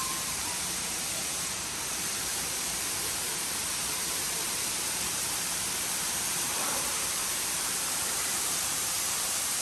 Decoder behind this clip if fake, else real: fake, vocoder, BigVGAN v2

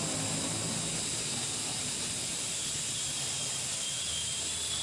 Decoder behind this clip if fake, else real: real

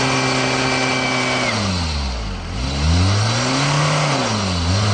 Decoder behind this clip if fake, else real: real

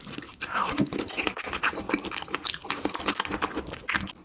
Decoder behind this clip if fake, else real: real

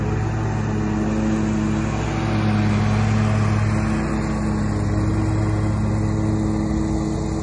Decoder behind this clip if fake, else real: real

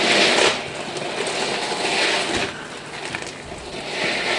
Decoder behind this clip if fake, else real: real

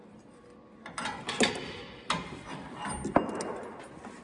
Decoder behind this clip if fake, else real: real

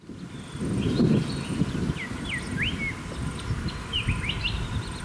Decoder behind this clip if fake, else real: real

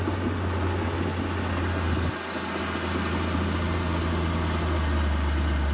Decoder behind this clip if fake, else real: real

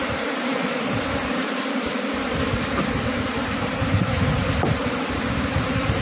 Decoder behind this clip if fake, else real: fake, vocoder, BigVGAN v2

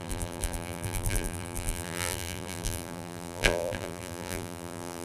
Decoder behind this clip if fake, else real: fake, vocoder, BigVGAN v2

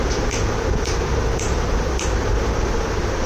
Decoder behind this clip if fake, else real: real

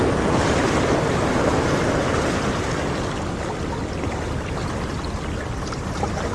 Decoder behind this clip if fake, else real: real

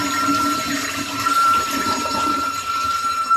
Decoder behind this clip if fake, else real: fake, vocoder, BigVGAN v2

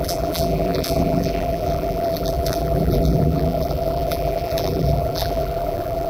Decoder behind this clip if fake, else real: fake, vocoder, BigVGAN v2